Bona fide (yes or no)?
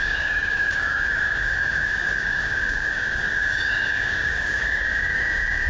no